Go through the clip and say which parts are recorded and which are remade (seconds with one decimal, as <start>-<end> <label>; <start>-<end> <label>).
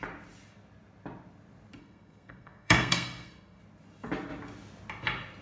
0.0-1.8 recorded; 1.8-3.6 remade; 3.6-5.4 recorded